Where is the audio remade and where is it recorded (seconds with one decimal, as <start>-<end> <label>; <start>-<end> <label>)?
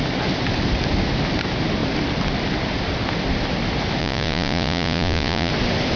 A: 0.0-4.0 recorded; 4.0-5.5 remade; 5.5-6.0 recorded